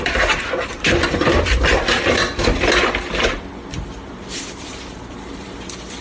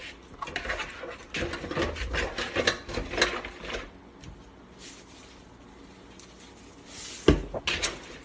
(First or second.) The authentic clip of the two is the second